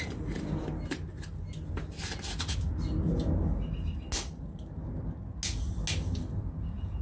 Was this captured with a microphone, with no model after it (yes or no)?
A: yes